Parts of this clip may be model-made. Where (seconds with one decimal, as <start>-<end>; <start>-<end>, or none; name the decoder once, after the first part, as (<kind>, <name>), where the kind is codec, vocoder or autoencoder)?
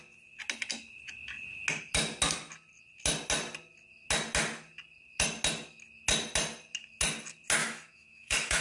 7.6-8.6 (autoencoder, DAC-VAE)